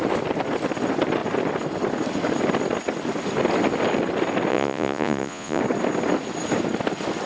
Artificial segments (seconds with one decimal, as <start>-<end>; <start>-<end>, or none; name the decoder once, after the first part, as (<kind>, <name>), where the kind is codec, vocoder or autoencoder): 4.5-5.6 (vocoder, Vocos)